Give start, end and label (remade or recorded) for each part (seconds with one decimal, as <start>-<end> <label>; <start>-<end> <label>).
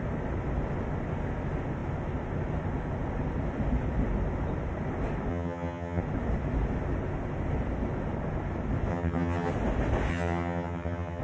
0.0-5.3 recorded; 5.3-6.0 remade; 6.0-8.9 recorded; 8.9-9.5 remade; 9.5-10.1 recorded; 10.1-11.2 remade